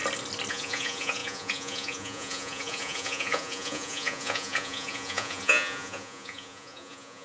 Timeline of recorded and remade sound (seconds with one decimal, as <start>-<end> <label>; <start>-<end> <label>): 0.0-0.5 recorded; 0.5-7.2 remade